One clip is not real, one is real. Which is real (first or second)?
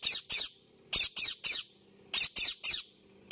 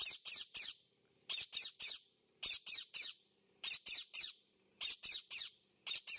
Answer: first